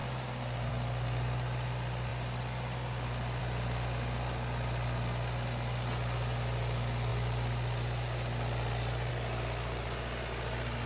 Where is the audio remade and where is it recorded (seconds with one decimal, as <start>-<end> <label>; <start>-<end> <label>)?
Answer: 0.0-10.9 recorded